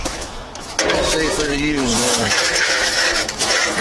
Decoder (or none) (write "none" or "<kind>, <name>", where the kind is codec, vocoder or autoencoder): autoencoder, DAC-VAE